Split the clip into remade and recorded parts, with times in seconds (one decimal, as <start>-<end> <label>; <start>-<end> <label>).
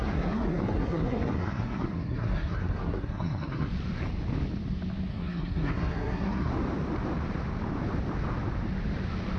0.0-3.7 remade; 3.7-5.1 recorded; 5.1-6.5 remade; 6.5-9.4 recorded